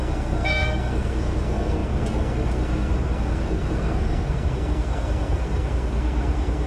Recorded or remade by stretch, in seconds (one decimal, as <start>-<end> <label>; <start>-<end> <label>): 0.0-6.7 remade